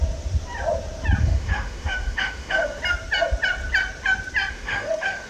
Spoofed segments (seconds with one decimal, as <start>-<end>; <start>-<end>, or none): 1.2-2.8; 4.5-5.3